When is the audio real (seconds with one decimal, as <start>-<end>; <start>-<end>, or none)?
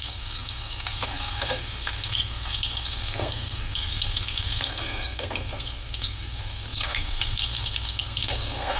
none